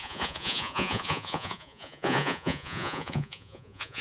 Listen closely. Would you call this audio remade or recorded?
remade